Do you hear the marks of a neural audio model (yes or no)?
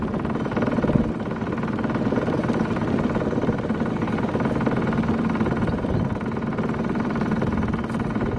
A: no